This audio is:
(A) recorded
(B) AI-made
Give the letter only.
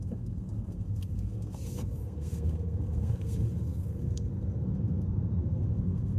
B